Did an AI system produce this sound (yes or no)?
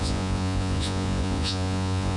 yes